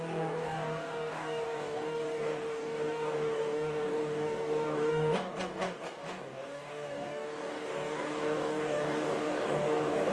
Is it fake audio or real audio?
fake